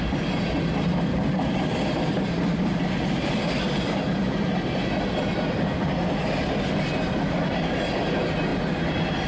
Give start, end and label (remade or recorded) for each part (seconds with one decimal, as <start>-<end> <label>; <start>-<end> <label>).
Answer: 0.0-9.3 recorded